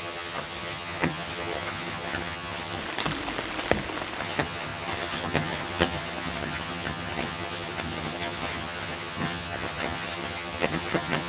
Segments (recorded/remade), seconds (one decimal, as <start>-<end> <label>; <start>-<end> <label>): 0.0-2.8 remade; 2.8-4.2 recorded; 4.2-11.3 remade